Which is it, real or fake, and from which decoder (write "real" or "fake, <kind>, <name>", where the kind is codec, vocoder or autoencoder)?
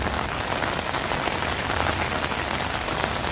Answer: real